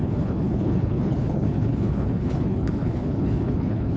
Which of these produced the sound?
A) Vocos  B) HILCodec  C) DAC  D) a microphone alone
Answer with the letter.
B